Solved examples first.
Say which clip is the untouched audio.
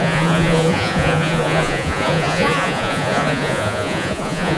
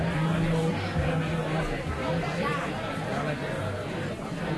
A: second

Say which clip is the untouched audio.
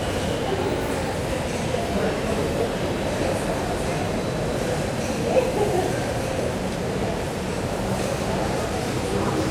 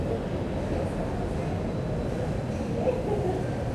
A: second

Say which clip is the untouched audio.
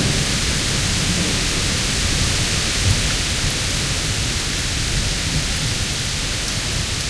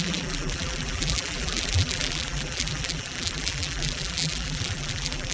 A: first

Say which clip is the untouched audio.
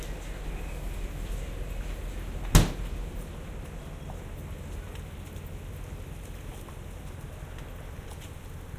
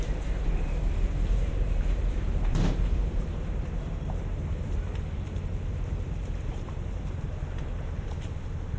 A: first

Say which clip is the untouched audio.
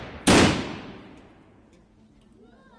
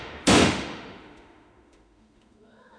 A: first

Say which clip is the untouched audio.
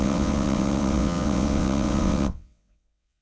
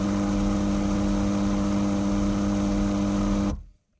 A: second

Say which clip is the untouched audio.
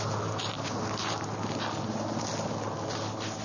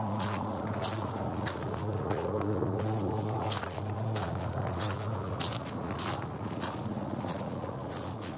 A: first